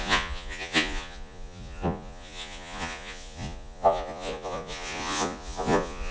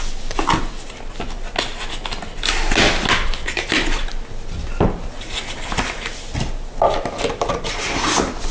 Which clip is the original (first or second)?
second